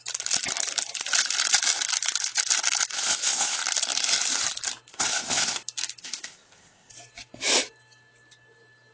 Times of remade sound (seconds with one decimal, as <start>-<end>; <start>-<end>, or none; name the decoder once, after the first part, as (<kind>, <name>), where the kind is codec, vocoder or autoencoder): 2.9-3.6 (codec, ZipCodec); 4.9-5.6; 6.0-6.9